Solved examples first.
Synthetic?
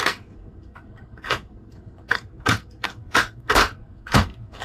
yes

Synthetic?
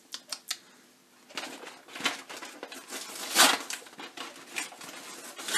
no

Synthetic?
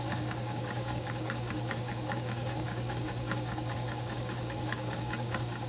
yes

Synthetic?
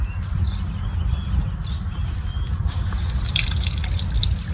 no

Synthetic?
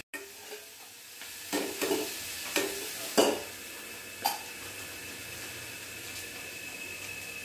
no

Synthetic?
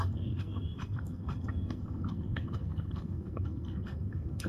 yes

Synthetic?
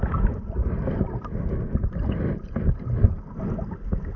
yes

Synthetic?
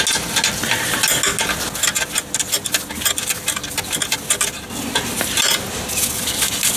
no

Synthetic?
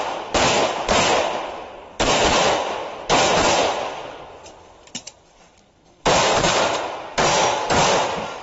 yes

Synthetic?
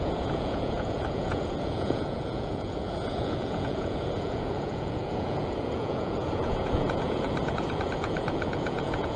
yes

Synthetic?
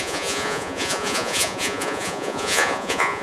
yes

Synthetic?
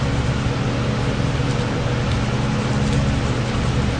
no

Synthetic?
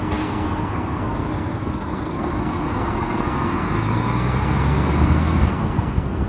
yes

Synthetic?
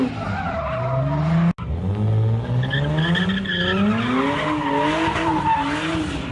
no